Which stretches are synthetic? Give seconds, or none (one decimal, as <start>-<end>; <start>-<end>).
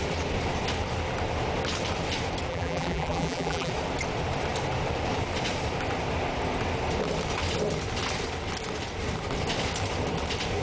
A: 2.5-3.7